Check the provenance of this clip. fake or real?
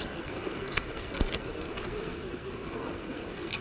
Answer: fake